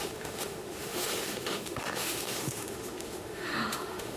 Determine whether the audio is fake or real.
fake